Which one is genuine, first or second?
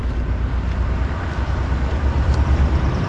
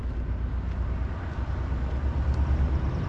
second